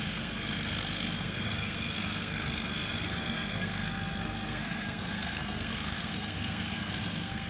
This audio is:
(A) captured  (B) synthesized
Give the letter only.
B